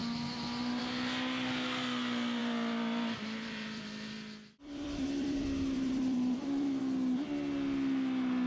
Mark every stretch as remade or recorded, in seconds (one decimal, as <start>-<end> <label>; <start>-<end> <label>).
0.0-2.4 recorded; 2.4-6.8 remade; 6.8-8.5 recorded